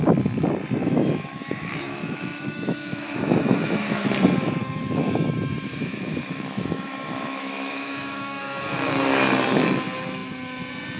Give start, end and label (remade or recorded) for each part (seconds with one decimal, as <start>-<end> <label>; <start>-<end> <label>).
0.0-0.8 recorded; 0.8-4.1 remade; 4.1-4.6 recorded; 4.6-8.4 remade; 8.4-11.0 recorded